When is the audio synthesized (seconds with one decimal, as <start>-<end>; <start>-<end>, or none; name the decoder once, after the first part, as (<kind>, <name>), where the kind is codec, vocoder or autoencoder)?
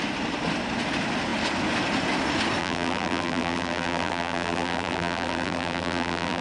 2.6-6.4 (vocoder, BigVGAN v2)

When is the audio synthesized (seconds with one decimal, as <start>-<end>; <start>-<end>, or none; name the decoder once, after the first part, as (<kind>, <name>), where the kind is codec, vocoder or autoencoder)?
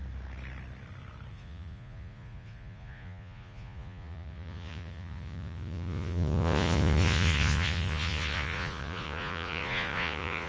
1.3-10.5 (vocoder, Vocos)